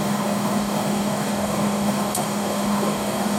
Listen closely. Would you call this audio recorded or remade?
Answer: remade